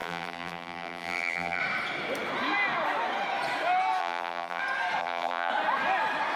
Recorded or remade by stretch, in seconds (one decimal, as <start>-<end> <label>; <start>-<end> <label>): 0.0-1.6 remade; 1.6-4.0 recorded; 4.0-4.6 remade; 4.6-5.0 recorded; 5.0-5.5 remade; 5.5-6.4 recorded